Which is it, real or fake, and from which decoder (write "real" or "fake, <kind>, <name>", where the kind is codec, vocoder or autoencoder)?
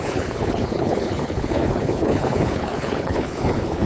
fake, codec, HILCodec